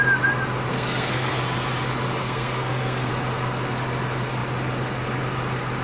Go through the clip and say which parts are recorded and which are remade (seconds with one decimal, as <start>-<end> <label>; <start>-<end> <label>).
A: 0.0-0.7 recorded; 0.7-1.3 remade; 1.3-2.2 recorded; 2.2-3.1 remade; 3.1-5.8 recorded